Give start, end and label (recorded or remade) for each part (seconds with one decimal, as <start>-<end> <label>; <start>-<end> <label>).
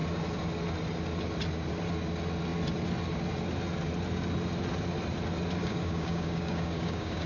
0.0-5.6 recorded; 5.6-7.3 remade